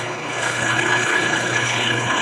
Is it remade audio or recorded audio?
remade